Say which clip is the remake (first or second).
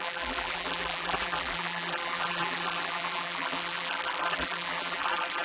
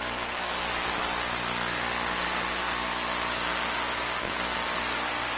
first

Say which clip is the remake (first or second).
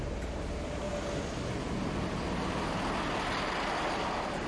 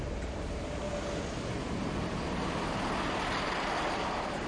second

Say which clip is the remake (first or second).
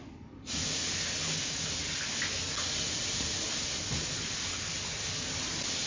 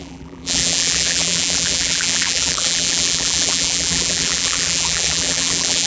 second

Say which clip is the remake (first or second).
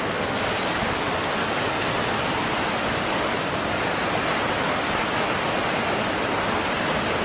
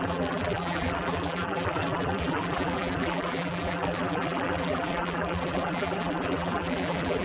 second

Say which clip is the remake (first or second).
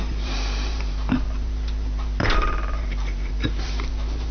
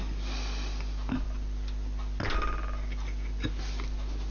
first